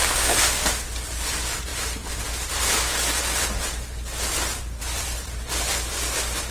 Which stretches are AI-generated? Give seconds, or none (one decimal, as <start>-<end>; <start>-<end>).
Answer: none

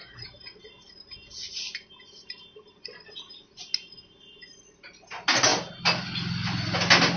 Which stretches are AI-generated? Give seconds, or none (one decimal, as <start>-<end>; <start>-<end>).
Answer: none

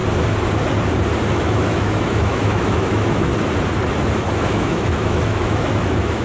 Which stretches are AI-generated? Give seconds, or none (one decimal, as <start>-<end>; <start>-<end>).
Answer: 1.3-3.3; 4.3-6.2